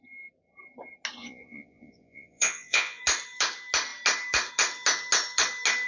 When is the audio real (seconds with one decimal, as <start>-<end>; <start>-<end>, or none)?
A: 0.0-1.2; 3.0-5.9

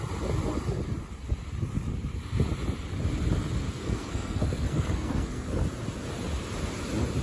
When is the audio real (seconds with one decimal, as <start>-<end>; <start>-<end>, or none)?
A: 0.0-3.8; 5.6-7.2

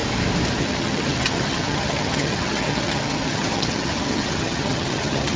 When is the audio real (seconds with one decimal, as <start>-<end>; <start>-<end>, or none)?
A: 0.0-0.6

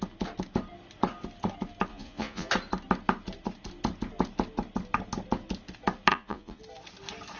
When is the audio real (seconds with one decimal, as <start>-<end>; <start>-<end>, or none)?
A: 0.0-1.9; 2.5-6.1; 6.6-7.4

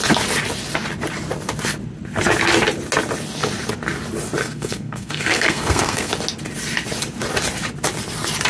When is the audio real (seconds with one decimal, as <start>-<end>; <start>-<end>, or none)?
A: 0.0-4.4; 6.1-8.5

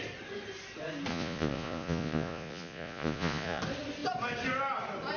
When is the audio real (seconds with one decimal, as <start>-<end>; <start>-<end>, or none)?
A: 0.0-1.1; 3.6-5.2